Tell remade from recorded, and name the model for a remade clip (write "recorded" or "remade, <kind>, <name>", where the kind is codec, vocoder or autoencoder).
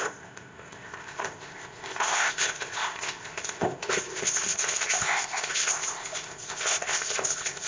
remade, codec, ZipCodec